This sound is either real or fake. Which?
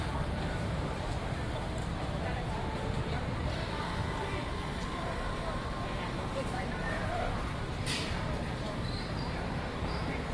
fake